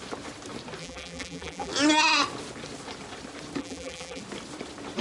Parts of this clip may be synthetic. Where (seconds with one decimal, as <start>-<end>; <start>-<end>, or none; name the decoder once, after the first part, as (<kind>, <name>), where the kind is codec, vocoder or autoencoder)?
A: 0.8-1.7 (vocoder, BigVGAN v2); 3.6-4.2